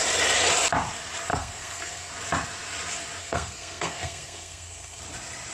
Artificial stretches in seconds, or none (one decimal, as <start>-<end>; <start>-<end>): 1.3-2.1; 3.2-5.0